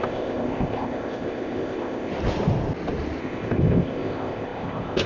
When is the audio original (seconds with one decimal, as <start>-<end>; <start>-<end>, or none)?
2.1-3.2